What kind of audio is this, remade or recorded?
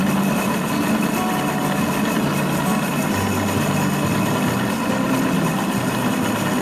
recorded